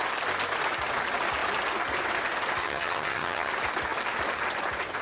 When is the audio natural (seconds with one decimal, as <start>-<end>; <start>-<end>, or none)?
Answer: 0.0-2.6; 3.5-5.0